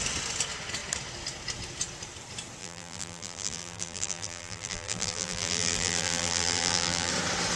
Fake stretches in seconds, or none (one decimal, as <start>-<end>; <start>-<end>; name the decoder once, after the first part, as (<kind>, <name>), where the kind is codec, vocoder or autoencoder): 2.6-7.1 (vocoder, BigVGAN v2)